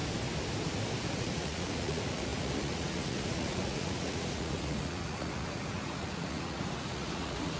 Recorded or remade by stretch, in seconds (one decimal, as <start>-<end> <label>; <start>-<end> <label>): 0.0-1.1 recorded; 1.1-7.6 remade